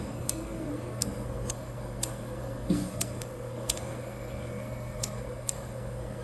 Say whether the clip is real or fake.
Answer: fake